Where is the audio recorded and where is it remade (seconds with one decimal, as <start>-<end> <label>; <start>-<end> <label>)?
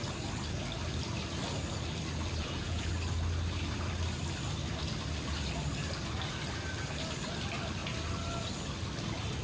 0.0-2.4 recorded; 2.4-2.9 remade; 2.9-9.4 recorded